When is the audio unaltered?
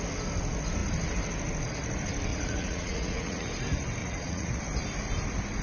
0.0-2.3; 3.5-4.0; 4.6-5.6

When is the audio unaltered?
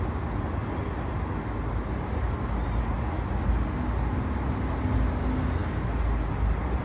0.0-6.8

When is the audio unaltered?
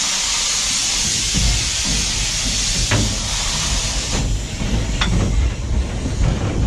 0.0-6.7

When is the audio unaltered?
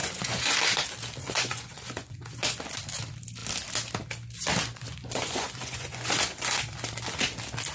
0.6-1.2; 2.6-4.7; 6.6-7.7